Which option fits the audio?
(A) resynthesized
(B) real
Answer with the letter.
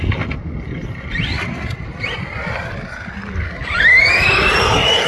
B